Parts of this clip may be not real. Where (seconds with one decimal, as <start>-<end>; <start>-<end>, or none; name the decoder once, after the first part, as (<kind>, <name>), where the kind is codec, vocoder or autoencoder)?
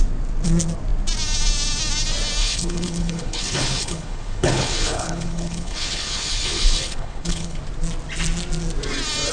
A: 2.4-7.6 (codec, HILCodec)